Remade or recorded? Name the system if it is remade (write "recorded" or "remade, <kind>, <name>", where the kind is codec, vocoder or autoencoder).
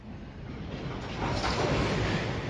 recorded